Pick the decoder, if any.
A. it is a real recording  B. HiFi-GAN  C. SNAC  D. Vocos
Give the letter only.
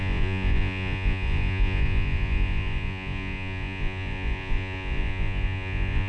D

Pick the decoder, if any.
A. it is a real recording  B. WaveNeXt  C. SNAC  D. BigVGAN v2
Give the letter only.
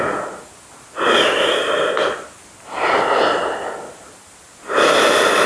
A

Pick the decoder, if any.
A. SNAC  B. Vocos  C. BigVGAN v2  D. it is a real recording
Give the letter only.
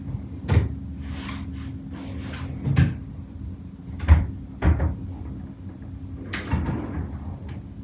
D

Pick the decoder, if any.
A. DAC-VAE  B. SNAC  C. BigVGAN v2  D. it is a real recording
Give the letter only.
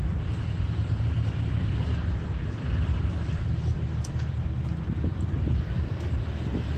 C